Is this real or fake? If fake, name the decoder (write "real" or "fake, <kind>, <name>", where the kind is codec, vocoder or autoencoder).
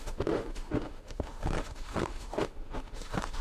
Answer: fake, autoencoder, DAC-VAE